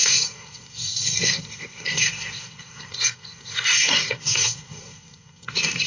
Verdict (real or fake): fake